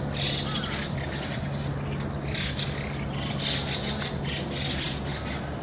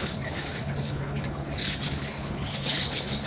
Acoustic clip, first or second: first